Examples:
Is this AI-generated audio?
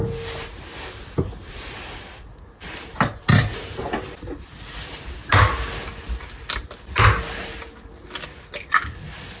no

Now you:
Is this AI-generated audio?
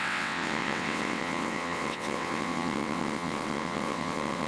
yes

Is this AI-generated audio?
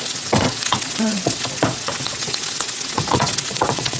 yes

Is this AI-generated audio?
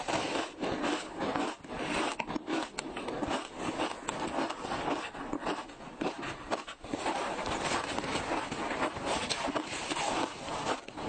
no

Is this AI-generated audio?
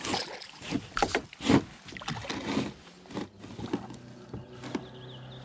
no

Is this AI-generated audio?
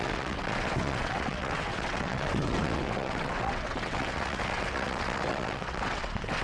yes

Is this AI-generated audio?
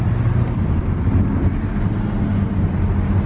no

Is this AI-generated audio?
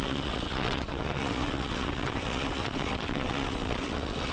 yes